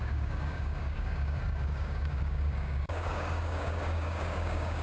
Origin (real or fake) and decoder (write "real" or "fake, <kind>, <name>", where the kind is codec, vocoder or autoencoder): fake, codec, DAC